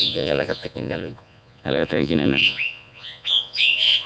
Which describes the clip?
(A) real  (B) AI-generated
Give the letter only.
B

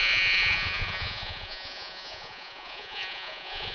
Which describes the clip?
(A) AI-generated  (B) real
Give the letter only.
A